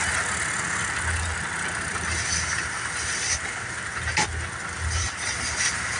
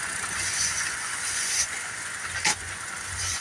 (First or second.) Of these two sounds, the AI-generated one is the second